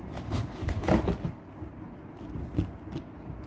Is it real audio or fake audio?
real